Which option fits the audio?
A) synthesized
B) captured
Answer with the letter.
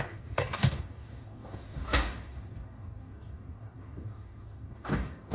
A